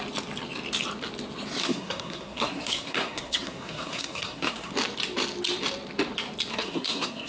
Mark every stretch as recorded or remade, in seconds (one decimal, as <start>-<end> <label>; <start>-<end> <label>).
0.0-1.6 recorded; 1.6-4.7 remade; 4.7-6.5 recorded; 6.5-7.3 remade